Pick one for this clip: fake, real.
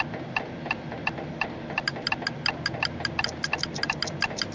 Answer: real